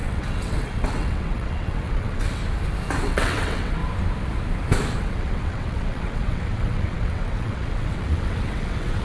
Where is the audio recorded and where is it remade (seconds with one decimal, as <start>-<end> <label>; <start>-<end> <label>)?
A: 0.0-2.4 remade; 2.4-3.0 recorded; 3.0-3.8 remade; 3.8-5.0 recorded; 5.0-9.0 remade